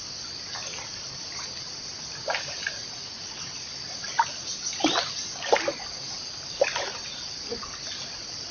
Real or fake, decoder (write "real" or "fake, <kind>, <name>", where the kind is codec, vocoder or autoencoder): real